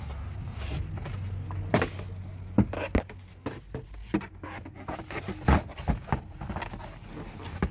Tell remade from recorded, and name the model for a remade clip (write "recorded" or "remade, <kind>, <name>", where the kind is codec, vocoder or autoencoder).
recorded